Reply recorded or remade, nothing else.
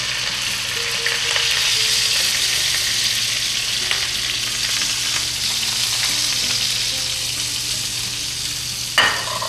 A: recorded